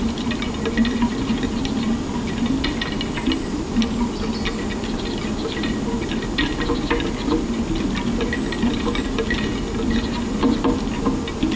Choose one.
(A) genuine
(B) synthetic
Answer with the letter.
A